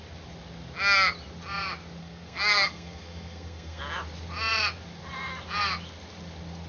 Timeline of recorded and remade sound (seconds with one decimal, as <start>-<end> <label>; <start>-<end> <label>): 0.0-2.0 recorded; 2.0-3.8 remade; 3.8-6.7 recorded